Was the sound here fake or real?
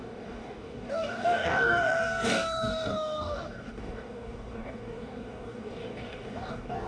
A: fake